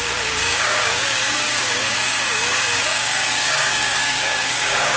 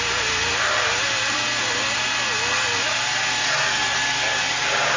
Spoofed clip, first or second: first